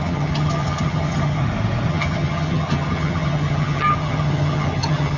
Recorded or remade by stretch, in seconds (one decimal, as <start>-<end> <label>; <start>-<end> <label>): 0.0-1.4 remade; 1.4-1.9 recorded; 1.9-5.2 remade